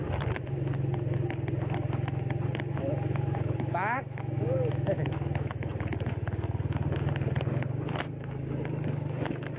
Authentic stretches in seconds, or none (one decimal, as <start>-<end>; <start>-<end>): 0.0-2.8; 5.7-9.6